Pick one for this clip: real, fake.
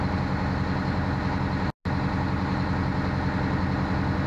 real